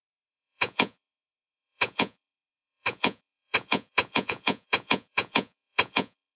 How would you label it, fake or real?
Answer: fake